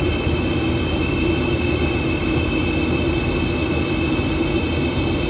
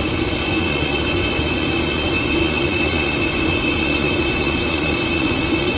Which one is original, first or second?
first